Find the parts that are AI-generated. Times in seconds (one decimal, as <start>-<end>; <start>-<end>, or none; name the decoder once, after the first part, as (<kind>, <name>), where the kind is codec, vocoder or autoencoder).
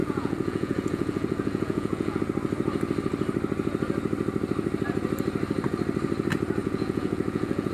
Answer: 0.0-2.2 (vocoder, Vocos); 6.6-7.7